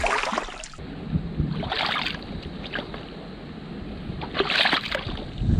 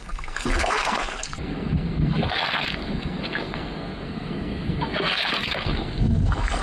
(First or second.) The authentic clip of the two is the first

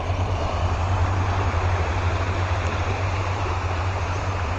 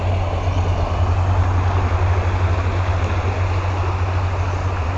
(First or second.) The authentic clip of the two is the second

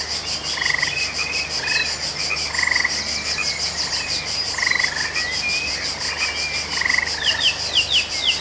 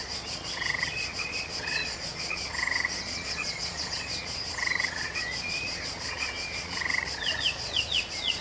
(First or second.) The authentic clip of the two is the first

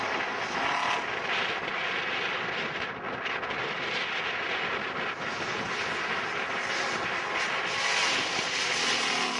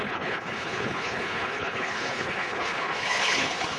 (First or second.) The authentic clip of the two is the first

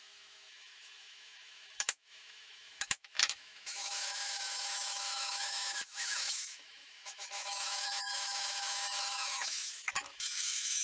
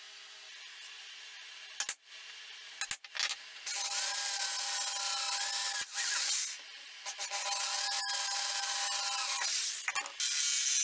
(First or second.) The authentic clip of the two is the second